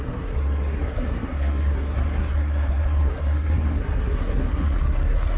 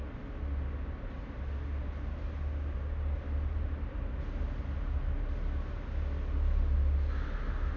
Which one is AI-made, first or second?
first